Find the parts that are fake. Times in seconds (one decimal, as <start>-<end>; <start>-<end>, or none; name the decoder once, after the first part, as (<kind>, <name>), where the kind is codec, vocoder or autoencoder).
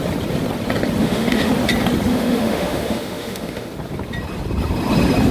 1.0-1.5 (autoencoder, DAC-VAE); 2.1-3.7